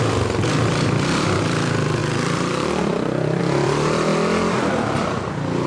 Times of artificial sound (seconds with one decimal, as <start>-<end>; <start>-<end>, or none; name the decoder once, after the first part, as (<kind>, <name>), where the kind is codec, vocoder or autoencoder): 0.0-4.1 (vocoder, BigVGAN v2); 4.6-5.7